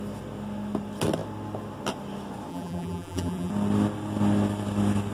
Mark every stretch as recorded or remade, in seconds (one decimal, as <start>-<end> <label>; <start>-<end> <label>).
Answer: 0.0-2.5 recorded; 2.5-3.5 remade; 3.5-5.1 recorded